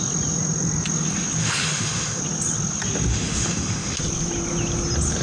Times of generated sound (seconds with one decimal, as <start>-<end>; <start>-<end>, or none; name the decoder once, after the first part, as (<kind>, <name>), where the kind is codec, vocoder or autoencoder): 1.4-2.2 (autoencoder, DAC-VAE); 3.1-4.0